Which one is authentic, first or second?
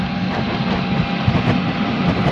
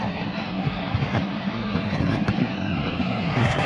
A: first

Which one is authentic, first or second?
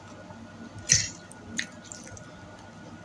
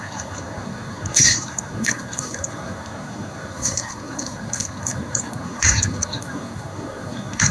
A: first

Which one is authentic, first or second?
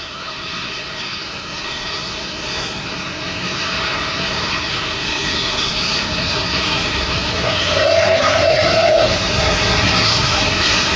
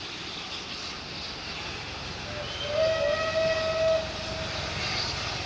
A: second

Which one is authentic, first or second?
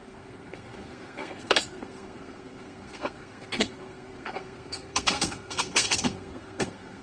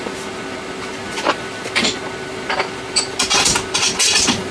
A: second